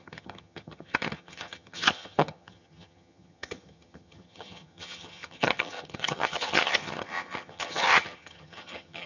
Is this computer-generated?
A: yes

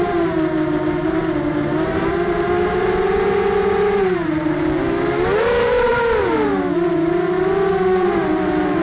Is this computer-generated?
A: yes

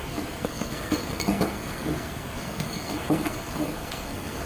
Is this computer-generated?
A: yes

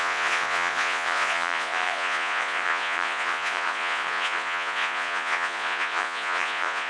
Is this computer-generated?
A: yes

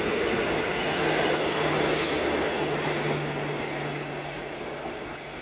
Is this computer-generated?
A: no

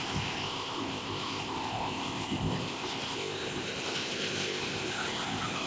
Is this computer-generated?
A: yes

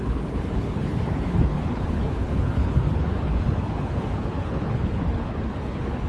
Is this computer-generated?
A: yes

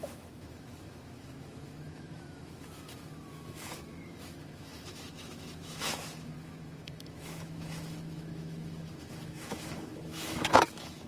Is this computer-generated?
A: yes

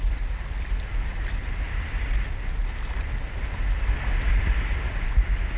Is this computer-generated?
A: no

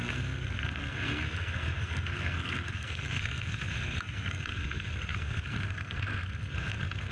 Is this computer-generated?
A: yes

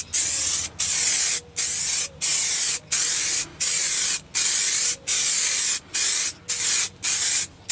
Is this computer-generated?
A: no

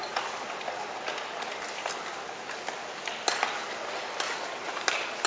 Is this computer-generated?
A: no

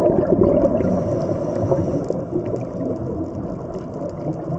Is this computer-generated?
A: no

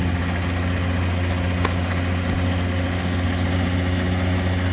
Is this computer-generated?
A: no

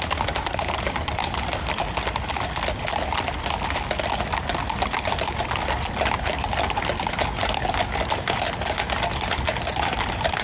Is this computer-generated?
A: no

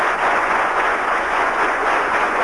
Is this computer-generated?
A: yes